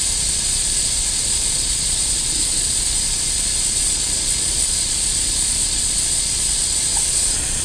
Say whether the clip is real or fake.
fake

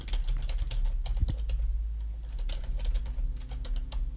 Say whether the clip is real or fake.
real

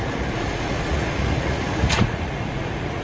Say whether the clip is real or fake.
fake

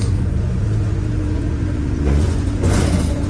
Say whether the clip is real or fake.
fake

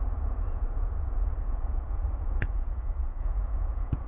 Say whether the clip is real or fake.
fake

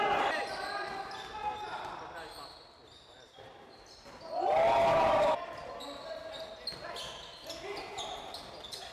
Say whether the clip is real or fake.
real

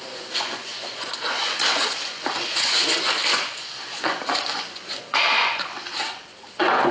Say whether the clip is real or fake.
fake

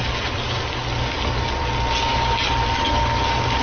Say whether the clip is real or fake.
real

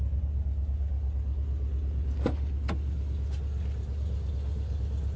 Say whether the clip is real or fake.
real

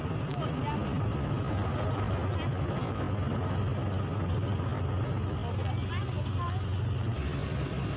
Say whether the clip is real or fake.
real